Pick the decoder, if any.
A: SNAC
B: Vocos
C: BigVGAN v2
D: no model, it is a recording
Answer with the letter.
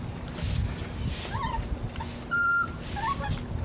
D